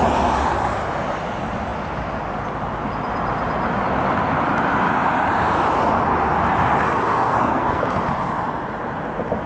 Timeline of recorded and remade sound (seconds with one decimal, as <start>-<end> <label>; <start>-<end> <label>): 0.0-7.1 recorded; 7.1-7.8 remade; 7.8-9.5 recorded